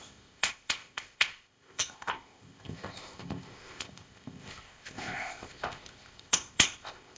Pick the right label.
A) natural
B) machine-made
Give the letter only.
B